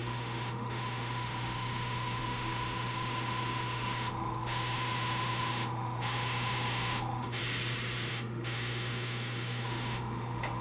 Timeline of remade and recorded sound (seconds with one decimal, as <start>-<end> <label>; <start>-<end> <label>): 0.0-7.4 remade; 7.4-8.1 recorded; 8.1-10.6 remade